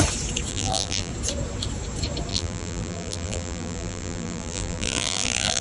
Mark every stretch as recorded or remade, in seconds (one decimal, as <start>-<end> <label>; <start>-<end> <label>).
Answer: 0.0-0.5 recorded; 0.5-1.1 remade; 1.1-2.3 recorded; 2.3-5.6 remade